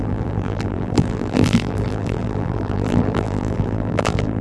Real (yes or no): no